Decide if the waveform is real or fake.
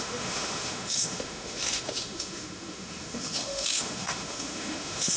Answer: fake